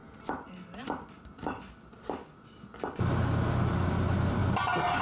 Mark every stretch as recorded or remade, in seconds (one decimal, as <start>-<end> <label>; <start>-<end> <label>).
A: 0.0-5.0 recorded